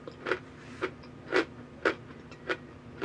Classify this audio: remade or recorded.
recorded